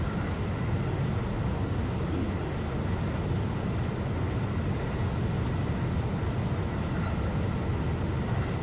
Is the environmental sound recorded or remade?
recorded